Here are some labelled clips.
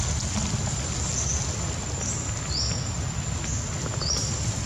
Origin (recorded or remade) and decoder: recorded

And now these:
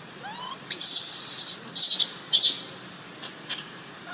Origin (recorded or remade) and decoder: recorded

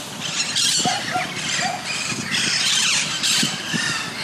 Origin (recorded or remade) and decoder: recorded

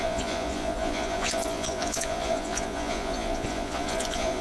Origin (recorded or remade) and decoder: remade, vocoder, Vocos